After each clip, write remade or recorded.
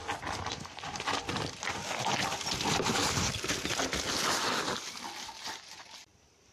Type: recorded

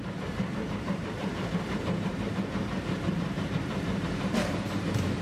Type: remade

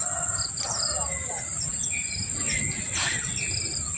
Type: recorded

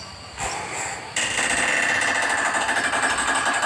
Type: recorded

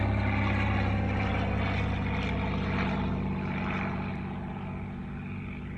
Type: recorded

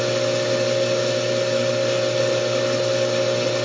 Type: recorded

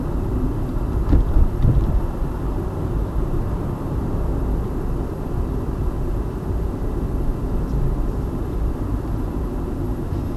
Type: remade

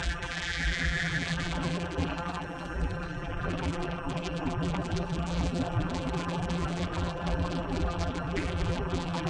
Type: remade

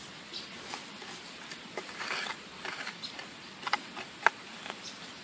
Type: recorded